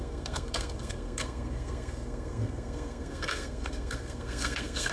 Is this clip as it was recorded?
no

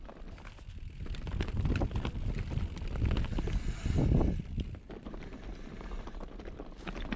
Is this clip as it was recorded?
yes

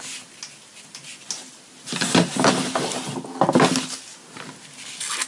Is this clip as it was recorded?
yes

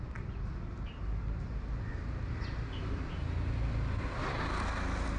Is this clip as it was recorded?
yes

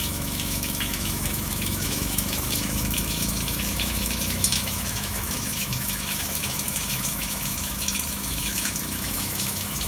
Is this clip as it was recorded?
no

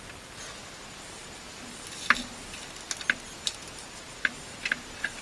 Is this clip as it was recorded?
yes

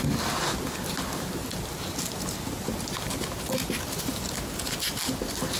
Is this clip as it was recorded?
yes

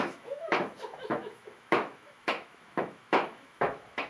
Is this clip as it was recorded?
no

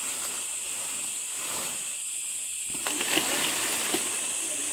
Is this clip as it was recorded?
yes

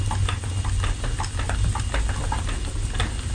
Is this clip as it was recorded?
yes